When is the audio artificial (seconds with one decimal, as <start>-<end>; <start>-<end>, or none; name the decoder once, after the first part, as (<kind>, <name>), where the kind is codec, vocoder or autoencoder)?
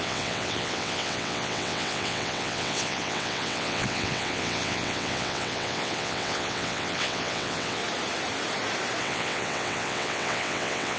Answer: 0.0-7.8 (vocoder, WaveNeXt); 9.0-11.0